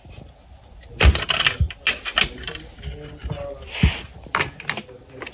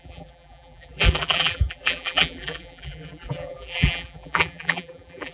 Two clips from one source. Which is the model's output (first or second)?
second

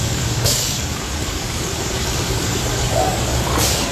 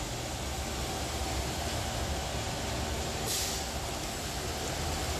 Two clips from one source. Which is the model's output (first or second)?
first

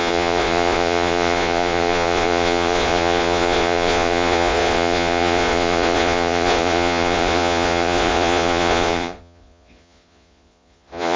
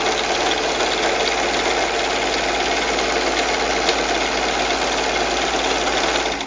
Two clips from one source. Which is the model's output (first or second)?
first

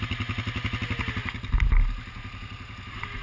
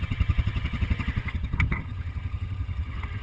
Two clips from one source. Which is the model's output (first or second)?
second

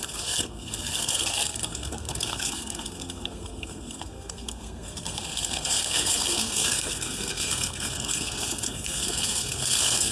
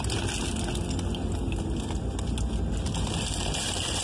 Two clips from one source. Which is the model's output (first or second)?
first